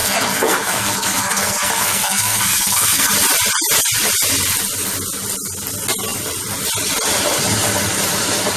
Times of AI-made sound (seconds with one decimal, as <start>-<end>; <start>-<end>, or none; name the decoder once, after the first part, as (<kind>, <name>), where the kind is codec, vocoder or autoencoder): 0.0-3.1 (codec, SNAC)